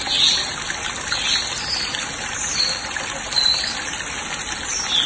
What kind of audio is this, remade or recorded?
recorded